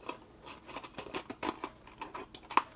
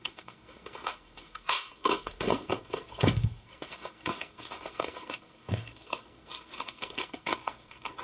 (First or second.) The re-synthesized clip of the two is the second